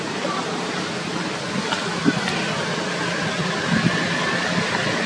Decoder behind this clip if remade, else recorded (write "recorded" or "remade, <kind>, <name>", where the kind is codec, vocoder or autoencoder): recorded